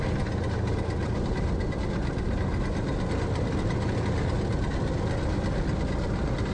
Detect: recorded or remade recorded